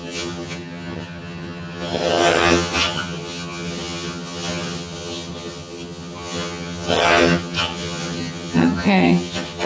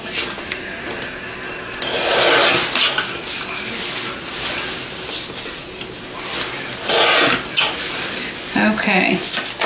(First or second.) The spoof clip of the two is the first